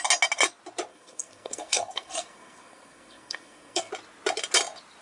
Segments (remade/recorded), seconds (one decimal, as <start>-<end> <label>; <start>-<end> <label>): 0.0-0.9 recorded; 0.9-3.9 remade; 3.9-5.0 recorded